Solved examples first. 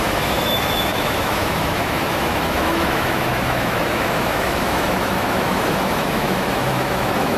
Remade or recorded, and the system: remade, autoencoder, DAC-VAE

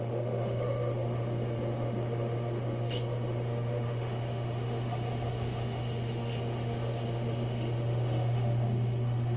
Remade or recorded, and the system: remade, autoencoder, DAC-VAE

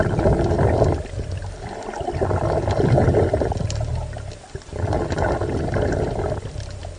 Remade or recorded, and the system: recorded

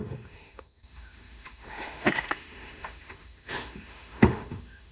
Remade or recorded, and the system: remade, autoencoder, DAC-VAE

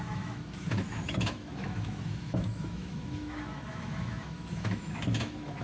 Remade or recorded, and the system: remade, autoencoder, DAC-VAE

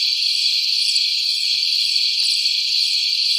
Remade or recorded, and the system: recorded